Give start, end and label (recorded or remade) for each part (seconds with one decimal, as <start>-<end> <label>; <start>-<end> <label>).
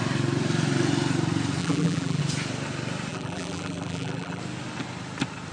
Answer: 0.0-1.6 recorded; 1.6-2.2 remade; 2.2-3.1 recorded; 3.1-4.4 remade; 4.4-5.5 recorded